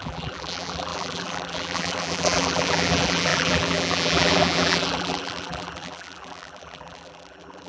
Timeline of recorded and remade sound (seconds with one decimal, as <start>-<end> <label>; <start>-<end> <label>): 0.0-7.7 remade